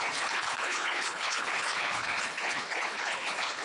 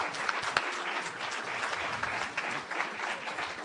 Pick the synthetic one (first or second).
first